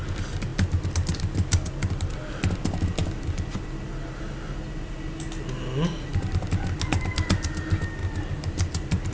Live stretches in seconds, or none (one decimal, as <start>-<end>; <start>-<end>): 0.0-9.1